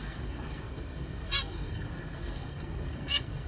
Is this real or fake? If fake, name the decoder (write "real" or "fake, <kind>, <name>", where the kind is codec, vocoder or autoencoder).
fake, codec, SNAC